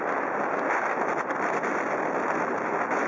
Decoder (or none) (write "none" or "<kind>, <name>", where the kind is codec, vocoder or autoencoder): none